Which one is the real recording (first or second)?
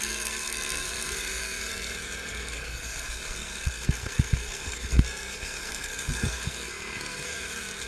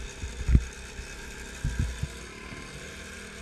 second